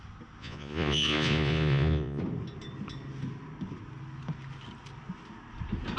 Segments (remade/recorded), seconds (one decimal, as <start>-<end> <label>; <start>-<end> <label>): 0.0-0.4 recorded; 0.4-2.2 remade; 2.2-6.0 recorded